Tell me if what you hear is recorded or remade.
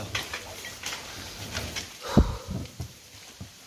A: recorded